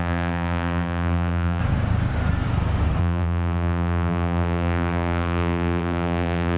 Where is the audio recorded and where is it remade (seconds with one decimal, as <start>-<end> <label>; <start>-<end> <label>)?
0.0-1.6 remade; 1.6-3.0 recorded; 3.0-6.6 remade